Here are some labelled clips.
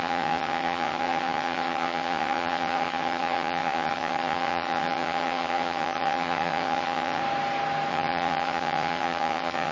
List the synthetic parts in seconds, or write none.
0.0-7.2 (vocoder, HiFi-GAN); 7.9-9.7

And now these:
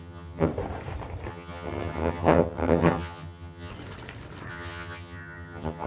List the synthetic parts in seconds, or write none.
0.0-0.5 (vocoder, HiFi-GAN); 1.3-3.7; 4.5-5.9

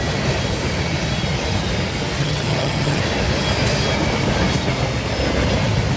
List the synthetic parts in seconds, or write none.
2.2-3.0 (vocoder, HiFi-GAN)

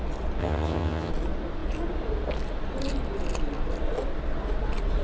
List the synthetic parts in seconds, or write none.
0.4-1.1 (vocoder, HiFi-GAN)

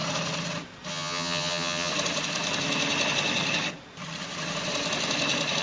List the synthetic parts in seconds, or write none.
0.9-1.9 (vocoder, HiFi-GAN)

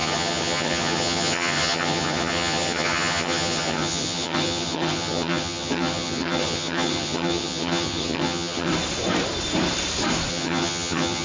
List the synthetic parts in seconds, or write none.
0.0-8.7 (vocoder, HiFi-GAN); 10.3-11.2

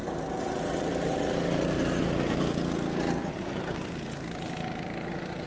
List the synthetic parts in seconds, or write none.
none

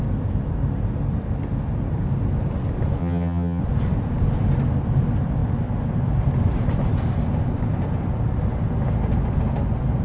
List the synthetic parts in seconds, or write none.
3.0-3.6 (vocoder, HiFi-GAN)